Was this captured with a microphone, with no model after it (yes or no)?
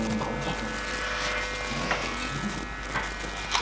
yes